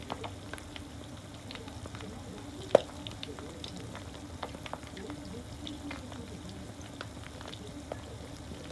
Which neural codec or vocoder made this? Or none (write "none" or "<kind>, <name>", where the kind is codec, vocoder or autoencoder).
none